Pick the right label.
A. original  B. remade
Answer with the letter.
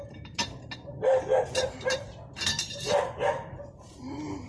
A